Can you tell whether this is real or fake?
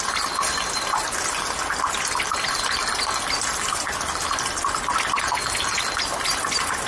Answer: real